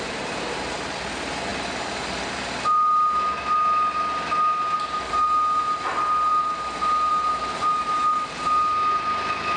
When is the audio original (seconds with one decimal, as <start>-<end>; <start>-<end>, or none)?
0.0-9.6